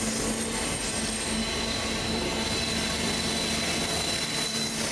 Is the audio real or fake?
real